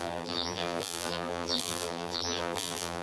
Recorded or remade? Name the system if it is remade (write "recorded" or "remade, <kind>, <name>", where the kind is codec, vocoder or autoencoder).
remade, vocoder, BigVGAN v2